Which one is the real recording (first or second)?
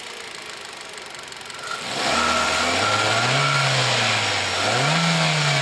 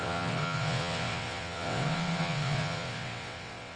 first